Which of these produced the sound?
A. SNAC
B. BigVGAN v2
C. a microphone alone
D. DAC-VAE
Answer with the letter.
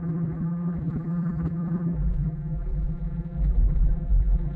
B